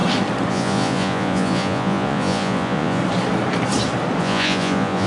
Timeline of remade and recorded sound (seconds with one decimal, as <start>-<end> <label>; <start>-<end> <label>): 0.0-0.5 recorded; 0.5-3.0 remade; 3.0-4.2 recorded; 4.2-5.1 remade